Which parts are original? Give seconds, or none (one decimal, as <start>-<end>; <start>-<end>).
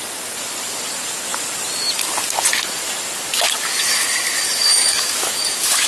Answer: 0.0-4.7